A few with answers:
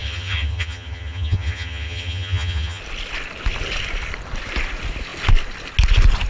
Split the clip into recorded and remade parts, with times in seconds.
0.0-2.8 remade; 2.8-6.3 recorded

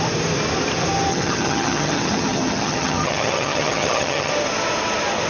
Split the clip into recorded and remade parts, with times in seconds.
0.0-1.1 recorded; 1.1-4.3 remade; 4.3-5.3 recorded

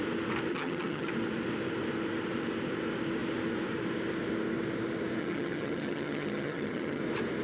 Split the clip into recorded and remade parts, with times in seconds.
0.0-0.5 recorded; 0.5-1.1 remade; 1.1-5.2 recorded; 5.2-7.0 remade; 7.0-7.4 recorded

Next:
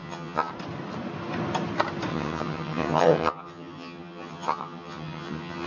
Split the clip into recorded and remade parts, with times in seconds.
0.0-0.5 remade; 0.5-2.1 recorded; 2.1-5.7 remade

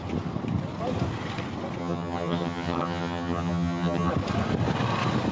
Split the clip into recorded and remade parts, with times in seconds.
0.0-1.8 recorded; 1.8-4.1 remade; 4.1-5.3 recorded